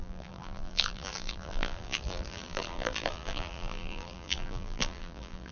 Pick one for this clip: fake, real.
fake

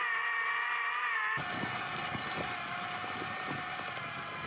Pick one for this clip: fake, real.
real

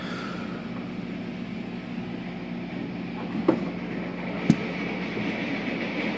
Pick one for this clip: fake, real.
real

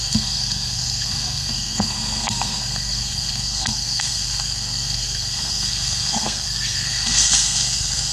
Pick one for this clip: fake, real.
fake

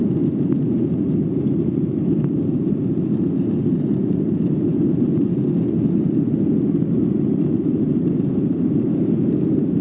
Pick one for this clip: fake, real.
fake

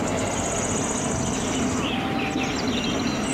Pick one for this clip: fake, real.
real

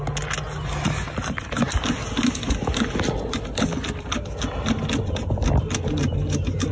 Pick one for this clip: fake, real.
real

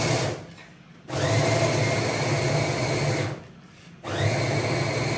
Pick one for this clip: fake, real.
real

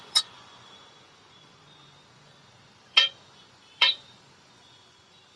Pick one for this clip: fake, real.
fake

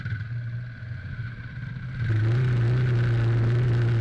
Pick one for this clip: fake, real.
real